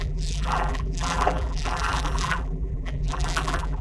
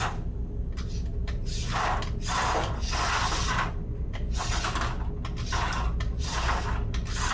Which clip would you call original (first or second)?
second